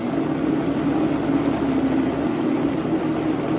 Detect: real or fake real